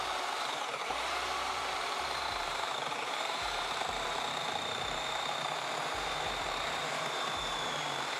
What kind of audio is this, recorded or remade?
remade